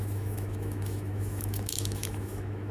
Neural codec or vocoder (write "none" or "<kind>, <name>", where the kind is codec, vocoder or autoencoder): autoencoder, DAC-VAE